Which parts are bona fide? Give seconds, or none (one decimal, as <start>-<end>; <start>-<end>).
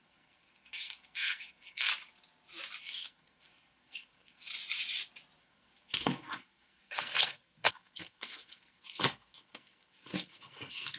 1.9-2.8; 4.5-5.4